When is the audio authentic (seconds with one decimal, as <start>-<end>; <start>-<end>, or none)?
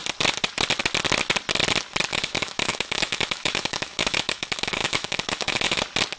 0.0-2.1; 5.8-6.2